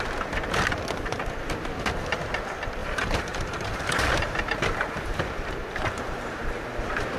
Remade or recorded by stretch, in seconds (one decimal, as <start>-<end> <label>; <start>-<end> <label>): 0.0-2.8 recorded; 2.8-7.2 remade